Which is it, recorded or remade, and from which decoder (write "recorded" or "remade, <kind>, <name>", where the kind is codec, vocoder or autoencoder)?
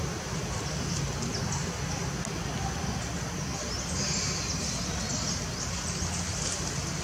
recorded